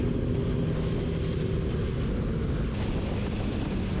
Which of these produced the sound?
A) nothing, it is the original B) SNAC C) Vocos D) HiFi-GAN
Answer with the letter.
A